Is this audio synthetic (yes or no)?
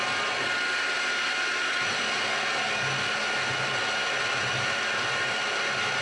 no